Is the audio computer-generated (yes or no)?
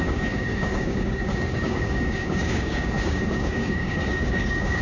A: yes